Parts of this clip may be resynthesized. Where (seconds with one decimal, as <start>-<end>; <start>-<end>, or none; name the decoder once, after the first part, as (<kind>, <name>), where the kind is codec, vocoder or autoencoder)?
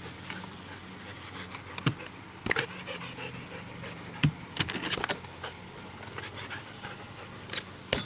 none